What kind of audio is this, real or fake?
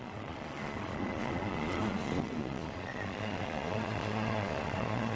fake